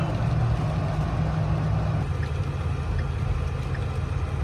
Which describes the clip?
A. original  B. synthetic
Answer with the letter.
A